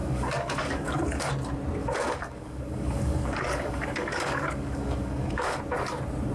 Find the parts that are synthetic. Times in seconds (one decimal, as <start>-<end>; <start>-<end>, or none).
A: 0.0-1.3; 1.8-5.6